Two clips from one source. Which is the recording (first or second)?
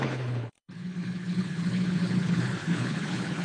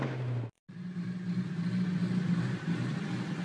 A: second